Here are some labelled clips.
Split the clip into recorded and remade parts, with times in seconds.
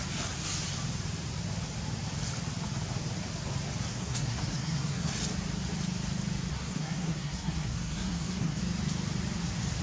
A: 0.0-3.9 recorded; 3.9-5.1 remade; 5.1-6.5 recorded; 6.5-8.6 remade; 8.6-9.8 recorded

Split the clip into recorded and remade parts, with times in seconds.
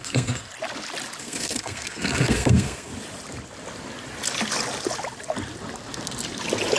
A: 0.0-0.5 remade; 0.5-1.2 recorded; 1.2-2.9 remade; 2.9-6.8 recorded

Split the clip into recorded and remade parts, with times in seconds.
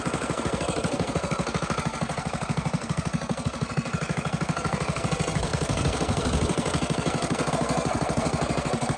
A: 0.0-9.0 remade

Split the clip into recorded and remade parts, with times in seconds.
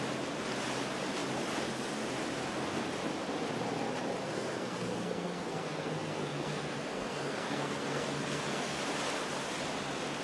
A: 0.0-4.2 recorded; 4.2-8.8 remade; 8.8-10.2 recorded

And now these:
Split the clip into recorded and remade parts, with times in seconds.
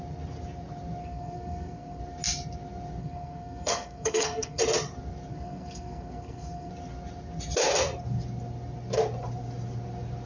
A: 0.0-1.0 recorded; 1.0-2.0 remade; 2.0-3.0 recorded; 3.0-4.6 remade; 4.6-5.3 recorded; 5.3-6.7 remade; 6.7-10.3 recorded